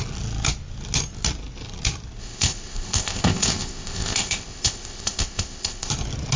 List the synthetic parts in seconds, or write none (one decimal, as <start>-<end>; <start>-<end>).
2.2-5.9